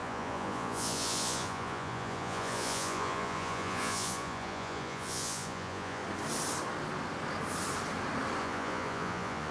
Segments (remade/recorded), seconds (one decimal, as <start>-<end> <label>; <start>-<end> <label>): 0.0-6.0 remade; 6.0-8.4 recorded; 8.4-9.5 remade